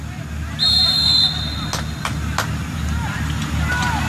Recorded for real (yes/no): yes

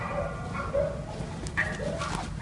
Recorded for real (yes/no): yes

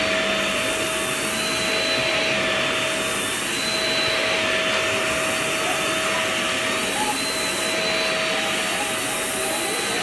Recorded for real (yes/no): yes